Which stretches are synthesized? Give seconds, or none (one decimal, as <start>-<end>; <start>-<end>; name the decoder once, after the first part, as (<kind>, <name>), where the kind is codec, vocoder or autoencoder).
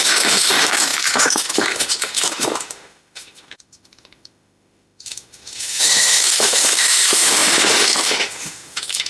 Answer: 0.0-9.1 (autoencoder, DAC-VAE)